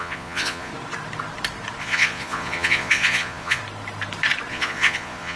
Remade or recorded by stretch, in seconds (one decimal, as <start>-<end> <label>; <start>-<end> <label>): 0.0-0.7 remade; 0.7-1.8 recorded; 1.8-3.6 remade; 3.6-4.5 recorded; 4.5-5.4 remade